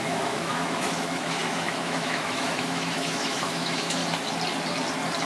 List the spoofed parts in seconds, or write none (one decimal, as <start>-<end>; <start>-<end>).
0.0-4.0